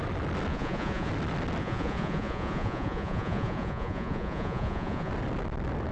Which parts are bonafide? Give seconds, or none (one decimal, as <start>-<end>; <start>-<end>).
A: 0.0-0.5; 1.1-1.6; 5.1-5.9